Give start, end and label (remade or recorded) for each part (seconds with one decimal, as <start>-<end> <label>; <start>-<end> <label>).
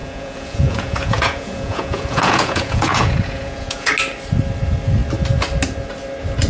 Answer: 0.0-3.9 remade; 3.9-6.5 recorded